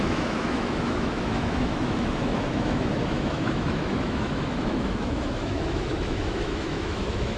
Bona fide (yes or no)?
no